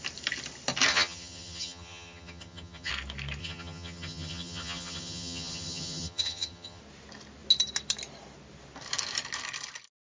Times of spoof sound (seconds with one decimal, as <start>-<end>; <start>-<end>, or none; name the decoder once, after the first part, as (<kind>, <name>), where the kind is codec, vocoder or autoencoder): 0.9-2.9 (vocoder, HiFi-GAN); 3.4-6.8